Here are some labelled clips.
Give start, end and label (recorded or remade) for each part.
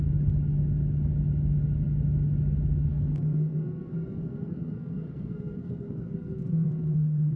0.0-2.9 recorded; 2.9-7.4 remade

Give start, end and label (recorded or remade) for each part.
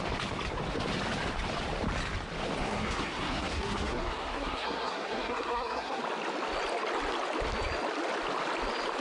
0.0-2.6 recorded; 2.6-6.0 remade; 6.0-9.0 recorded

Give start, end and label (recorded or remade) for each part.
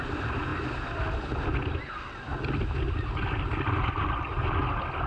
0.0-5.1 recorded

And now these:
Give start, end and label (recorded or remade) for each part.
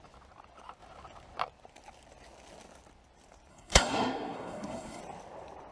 0.0-3.5 recorded; 3.5-5.0 remade; 5.0-5.7 recorded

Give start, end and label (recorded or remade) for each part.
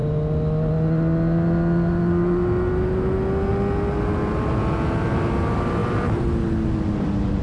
0.0-7.4 recorded